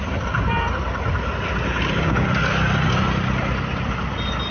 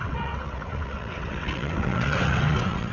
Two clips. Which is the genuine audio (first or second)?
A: first